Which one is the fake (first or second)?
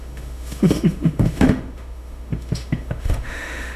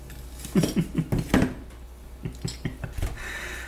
first